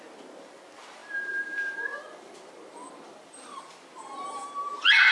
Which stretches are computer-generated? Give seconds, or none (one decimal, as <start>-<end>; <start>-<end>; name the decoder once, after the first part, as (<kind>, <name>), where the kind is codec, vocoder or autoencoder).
1.0-3.6 (vocoder, BigVGAN v2)